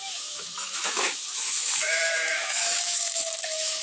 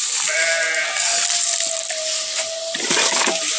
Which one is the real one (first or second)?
second